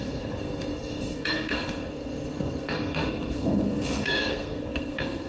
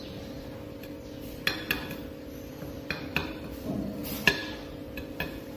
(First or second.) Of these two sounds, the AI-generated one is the first